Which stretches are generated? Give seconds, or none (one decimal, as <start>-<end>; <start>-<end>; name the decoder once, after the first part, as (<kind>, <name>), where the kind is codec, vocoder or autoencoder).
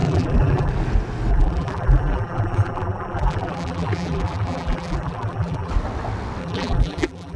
0.0-0.7 (vocoder, BigVGAN v2); 1.3-5.7; 6.4-7.4